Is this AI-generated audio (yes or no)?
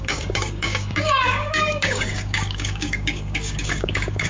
yes